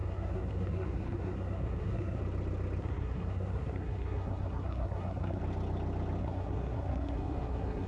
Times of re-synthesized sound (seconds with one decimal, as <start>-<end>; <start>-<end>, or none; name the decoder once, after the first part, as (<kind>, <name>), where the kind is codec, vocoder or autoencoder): 0.0-2.2 (codec, SNAC); 2.8-5.4; 6.2-7.9